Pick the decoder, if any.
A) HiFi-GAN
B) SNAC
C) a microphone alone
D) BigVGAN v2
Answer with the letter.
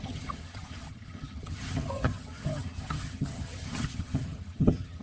A